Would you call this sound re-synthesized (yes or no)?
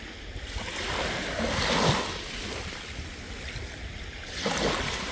no